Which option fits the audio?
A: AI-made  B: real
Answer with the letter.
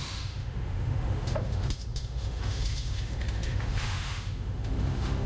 A